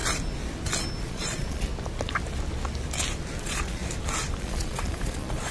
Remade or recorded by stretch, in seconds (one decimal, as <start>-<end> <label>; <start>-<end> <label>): 0.0-1.0 recorded; 1.0-1.7 remade; 1.7-3.4 recorded; 3.4-3.8 remade; 3.8-4.4 recorded; 4.4-5.5 remade